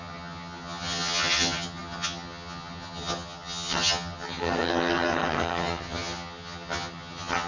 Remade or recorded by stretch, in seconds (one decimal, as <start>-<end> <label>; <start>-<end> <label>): 0.0-7.5 remade